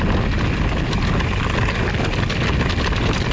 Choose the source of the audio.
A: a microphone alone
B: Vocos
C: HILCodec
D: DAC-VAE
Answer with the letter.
A